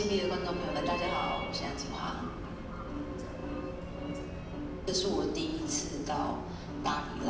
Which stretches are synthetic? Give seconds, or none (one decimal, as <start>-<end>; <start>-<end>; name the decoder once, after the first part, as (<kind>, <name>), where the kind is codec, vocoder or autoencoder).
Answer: none